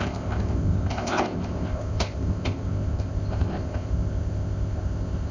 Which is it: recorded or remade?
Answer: remade